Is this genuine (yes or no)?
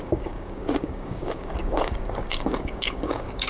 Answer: no